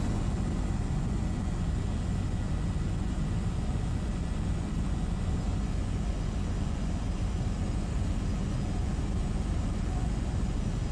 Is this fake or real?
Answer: fake